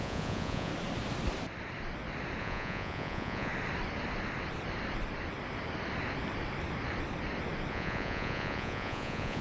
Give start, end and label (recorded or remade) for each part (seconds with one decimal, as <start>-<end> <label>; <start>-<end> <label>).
0.0-0.7 remade; 0.7-2.4 recorded; 2.4-3.5 remade; 3.5-7.7 recorded; 7.7-9.4 remade